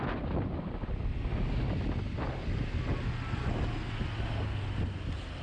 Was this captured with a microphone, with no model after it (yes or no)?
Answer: yes